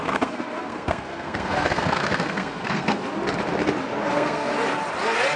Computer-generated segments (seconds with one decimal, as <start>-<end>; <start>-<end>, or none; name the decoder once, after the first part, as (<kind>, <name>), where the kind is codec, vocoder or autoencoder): 0.0-3.0 (codec, SNAC); 4.1-4.5